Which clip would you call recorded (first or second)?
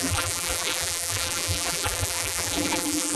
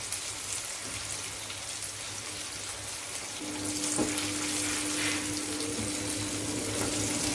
second